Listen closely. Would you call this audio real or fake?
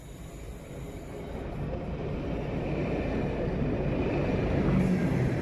real